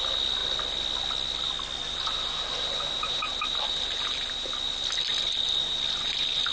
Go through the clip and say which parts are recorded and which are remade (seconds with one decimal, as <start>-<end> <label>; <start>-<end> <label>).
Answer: 0.0-6.5 recorded